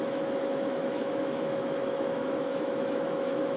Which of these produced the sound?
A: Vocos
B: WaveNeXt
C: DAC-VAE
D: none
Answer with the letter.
C